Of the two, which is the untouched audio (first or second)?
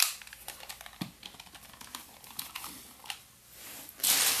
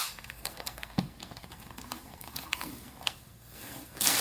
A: first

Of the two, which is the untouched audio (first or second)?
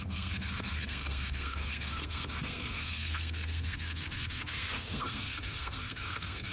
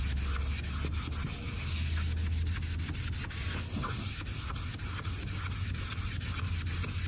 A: second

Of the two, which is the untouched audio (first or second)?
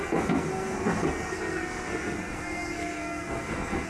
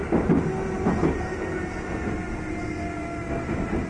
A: second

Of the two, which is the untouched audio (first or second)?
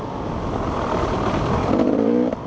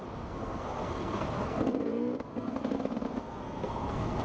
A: first